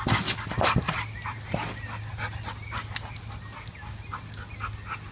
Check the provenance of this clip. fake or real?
real